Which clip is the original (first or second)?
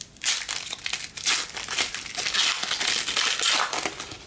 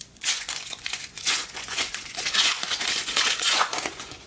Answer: first